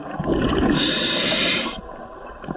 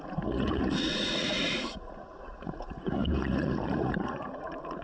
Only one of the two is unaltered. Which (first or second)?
first